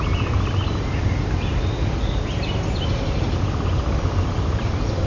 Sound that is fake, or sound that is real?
real